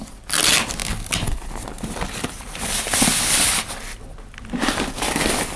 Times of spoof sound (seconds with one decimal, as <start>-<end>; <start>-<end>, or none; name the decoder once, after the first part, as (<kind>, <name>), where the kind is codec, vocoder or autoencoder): none